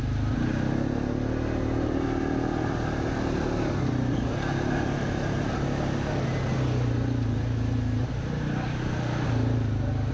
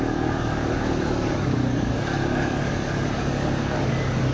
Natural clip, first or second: first